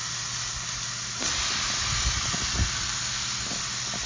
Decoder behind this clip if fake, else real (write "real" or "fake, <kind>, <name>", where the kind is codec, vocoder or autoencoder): real